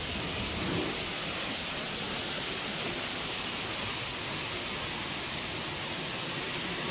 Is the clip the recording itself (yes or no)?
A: yes